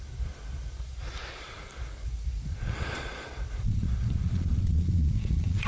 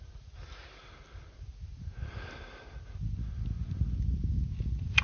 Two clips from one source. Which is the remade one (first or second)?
first